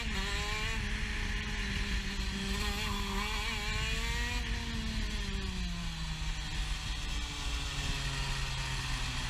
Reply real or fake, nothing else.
real